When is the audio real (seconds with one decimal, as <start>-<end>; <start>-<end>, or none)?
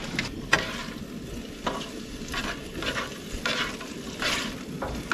0.0-5.1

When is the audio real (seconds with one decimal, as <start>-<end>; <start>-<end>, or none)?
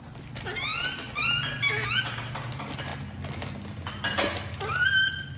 0.0-5.4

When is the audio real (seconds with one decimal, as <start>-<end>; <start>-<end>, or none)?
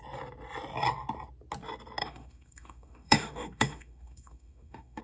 0.0-2.0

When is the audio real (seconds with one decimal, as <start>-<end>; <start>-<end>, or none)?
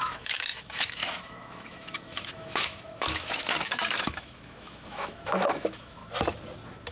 6.0-6.9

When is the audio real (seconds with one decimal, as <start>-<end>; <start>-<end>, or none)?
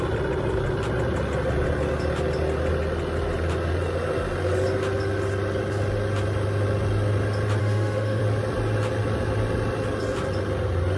0.0-7.6; 8.2-11.0